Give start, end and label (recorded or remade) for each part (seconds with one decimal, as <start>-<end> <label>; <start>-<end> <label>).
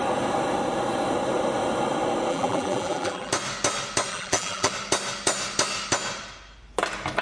0.0-2.3 recorded; 2.3-3.3 remade; 3.3-4.1 recorded; 4.1-4.7 remade; 4.7-7.2 recorded